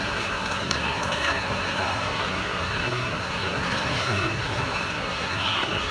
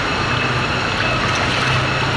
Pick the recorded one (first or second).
second